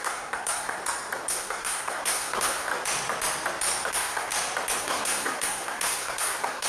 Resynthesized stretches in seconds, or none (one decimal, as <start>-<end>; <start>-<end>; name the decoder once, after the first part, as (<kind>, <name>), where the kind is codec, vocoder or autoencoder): 0.0-0.8 (codec, SNAC); 1.3-2.7; 3.9-4.3; 4.8-6.7